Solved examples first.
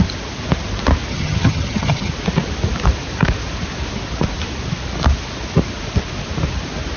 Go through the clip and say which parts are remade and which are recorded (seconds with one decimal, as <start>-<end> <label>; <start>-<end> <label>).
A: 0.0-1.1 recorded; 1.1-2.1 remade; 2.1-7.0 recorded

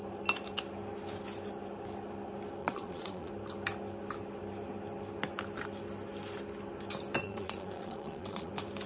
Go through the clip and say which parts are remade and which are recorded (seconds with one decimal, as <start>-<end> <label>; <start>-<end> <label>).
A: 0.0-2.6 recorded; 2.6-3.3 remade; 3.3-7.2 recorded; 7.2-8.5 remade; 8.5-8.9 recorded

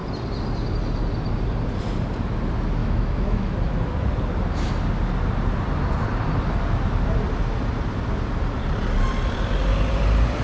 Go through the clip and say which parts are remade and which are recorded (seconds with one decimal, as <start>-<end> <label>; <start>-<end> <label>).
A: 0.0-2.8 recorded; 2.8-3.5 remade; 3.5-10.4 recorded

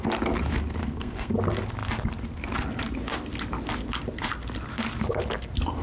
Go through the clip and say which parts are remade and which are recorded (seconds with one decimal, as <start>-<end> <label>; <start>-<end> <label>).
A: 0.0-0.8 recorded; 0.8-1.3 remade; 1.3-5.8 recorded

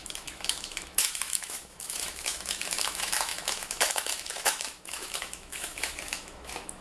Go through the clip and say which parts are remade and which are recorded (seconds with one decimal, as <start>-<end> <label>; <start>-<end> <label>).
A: 0.0-6.8 remade

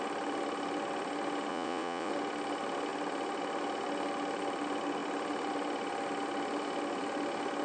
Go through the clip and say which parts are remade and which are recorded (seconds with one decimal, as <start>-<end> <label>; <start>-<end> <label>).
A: 0.0-1.5 recorded; 1.5-2.1 remade; 2.1-7.6 recorded

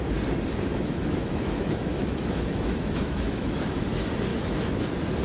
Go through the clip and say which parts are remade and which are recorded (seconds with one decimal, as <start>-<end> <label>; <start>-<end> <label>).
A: 0.0-0.7 recorded; 0.7-3.8 remade; 3.8-4.3 recorded; 4.3-4.8 remade; 4.8-5.2 recorded